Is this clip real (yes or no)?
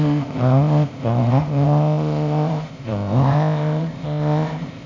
no